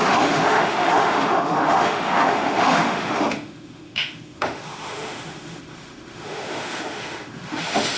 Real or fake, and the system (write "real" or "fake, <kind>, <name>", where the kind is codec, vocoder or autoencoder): fake, autoencoder, DAC-VAE